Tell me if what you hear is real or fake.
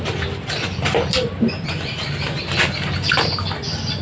real